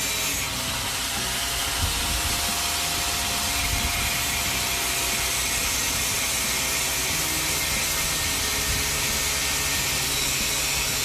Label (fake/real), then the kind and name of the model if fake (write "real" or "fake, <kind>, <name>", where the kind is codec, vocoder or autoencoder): real